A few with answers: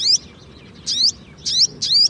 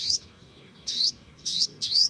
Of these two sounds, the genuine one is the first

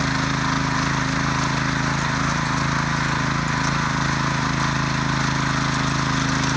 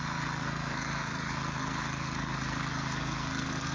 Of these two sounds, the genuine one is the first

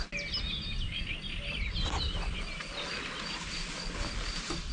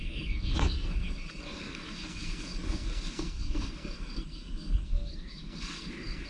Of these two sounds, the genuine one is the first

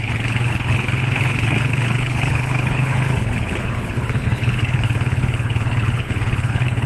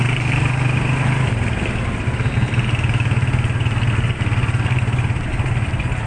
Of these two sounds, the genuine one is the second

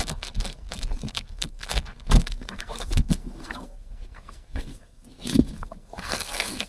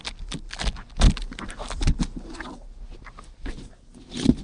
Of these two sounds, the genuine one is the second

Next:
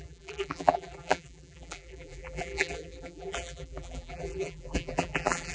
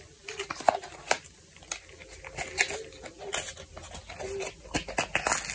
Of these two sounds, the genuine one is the second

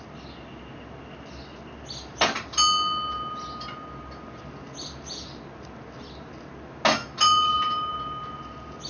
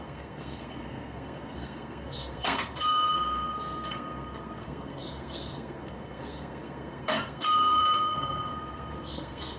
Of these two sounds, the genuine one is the first